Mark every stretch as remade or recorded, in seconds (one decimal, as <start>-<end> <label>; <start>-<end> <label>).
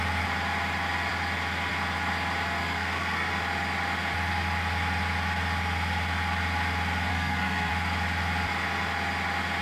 0.0-2.6 recorded; 2.6-3.3 remade; 3.3-7.1 recorded; 7.1-7.7 remade; 7.7-9.6 recorded